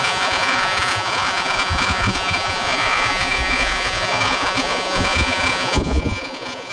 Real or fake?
fake